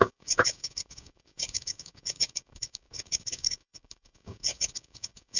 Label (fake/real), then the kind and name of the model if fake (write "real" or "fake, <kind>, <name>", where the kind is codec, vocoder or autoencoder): fake, codec, DAC